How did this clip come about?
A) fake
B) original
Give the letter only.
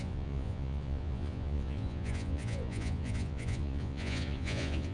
A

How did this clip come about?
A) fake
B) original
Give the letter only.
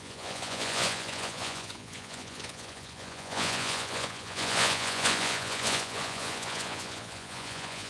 A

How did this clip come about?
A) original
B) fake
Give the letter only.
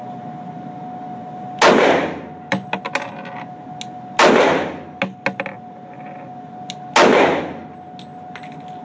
A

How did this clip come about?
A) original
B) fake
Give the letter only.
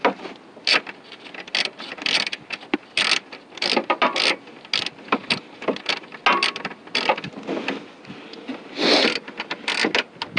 A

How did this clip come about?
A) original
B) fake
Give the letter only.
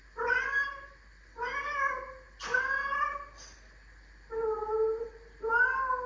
A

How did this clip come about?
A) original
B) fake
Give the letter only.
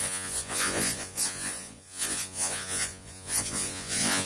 B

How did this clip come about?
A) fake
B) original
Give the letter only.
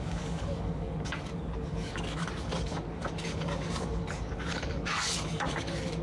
A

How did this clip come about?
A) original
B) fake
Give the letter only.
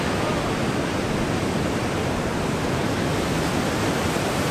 A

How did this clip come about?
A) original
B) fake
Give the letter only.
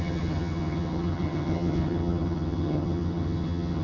B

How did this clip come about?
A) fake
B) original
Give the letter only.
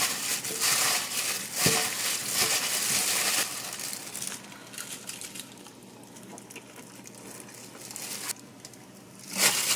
B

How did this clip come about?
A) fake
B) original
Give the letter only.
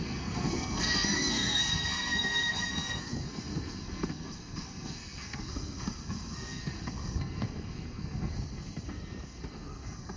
A